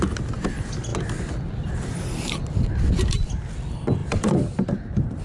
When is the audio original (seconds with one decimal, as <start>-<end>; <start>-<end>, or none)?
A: 0.0-4.0